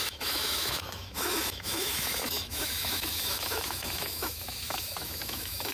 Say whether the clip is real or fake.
fake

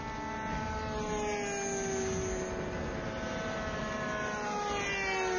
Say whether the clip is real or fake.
real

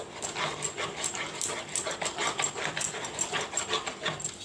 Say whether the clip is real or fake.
real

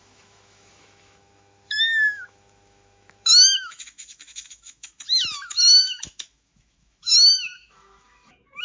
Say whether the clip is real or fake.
fake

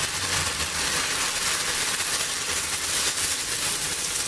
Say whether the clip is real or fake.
real